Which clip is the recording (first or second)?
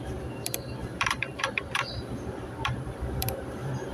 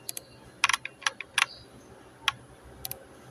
second